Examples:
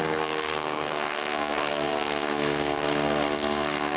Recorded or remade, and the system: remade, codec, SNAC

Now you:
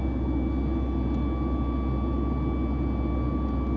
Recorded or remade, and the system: recorded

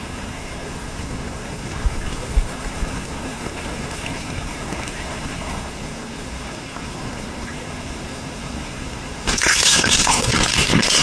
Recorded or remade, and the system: remade, codec, SNAC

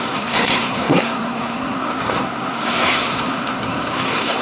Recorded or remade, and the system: remade, codec, SNAC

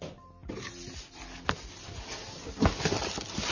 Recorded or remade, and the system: recorded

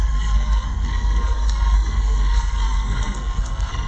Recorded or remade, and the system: remade, codec, SNAC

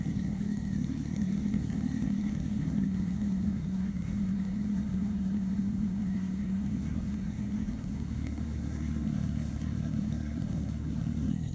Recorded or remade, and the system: remade, codec, SNAC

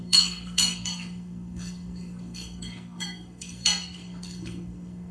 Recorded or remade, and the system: remade, codec, SNAC